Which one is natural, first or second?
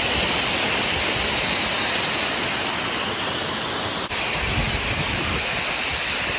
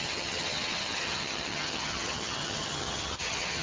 first